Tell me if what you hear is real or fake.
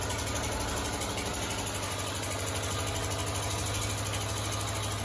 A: real